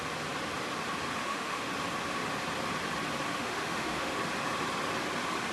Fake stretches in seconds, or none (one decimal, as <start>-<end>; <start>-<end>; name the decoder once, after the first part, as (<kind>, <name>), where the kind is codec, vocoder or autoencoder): 1.2-1.7 (autoencoder, DAC-VAE); 3.3-4.2